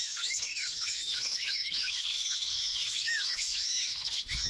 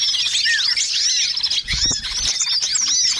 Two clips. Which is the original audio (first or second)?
second